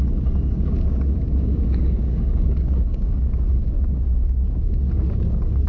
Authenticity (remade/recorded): remade